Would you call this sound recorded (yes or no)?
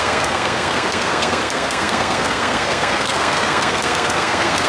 no